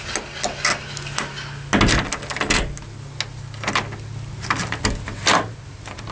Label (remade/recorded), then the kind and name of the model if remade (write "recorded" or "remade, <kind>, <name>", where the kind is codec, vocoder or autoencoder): recorded